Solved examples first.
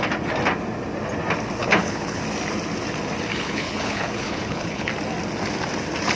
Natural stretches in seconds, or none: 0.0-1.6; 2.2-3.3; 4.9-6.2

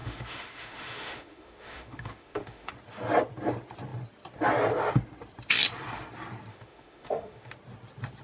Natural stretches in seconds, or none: 2.7-6.5; 7.5-8.2

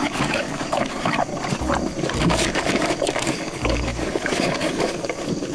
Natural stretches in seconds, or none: 1.3-2.2

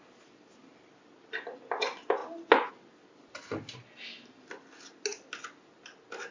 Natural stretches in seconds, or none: 0.0-6.3